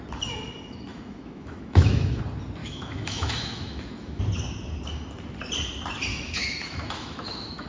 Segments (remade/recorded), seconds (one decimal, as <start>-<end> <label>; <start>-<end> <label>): 0.0-0.9 recorded; 0.9-2.2 remade; 2.2-2.6 recorded; 2.6-4.2 remade; 4.2-6.1 recorded; 6.1-7.7 remade